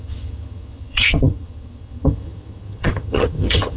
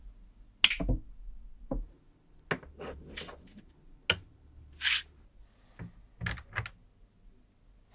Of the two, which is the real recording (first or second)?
second